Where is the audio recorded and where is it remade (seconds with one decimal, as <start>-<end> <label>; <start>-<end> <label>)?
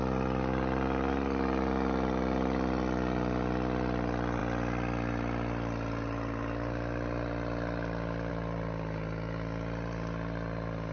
0.0-10.9 recorded